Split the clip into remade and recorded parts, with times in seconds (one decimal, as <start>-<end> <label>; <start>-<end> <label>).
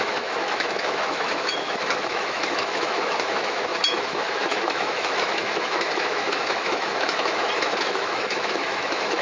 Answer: 0.0-9.2 remade